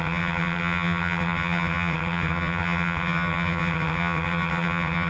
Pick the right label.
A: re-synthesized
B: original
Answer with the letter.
A